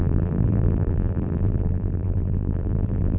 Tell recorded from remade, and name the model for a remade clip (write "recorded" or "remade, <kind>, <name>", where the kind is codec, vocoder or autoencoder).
remade, vocoder, BigVGAN v2